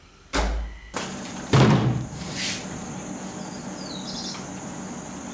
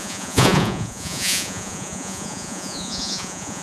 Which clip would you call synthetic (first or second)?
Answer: second